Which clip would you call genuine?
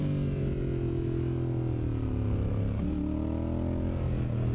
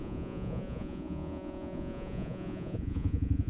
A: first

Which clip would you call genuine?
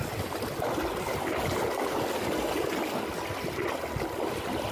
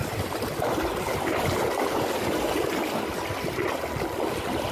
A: first